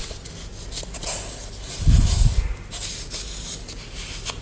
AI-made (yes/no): no